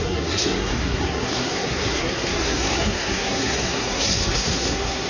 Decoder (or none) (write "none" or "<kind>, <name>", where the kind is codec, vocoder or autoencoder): codec, SNAC